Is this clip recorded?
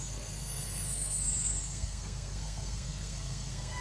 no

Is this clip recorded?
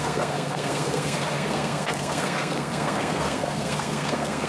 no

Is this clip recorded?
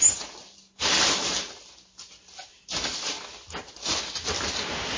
yes